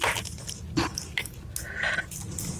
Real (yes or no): yes